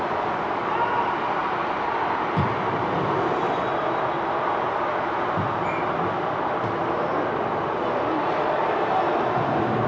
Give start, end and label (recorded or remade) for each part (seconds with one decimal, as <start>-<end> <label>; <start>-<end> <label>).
0.0-1.4 recorded; 1.4-3.3 remade; 3.3-9.9 recorded